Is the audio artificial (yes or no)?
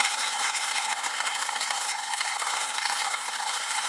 yes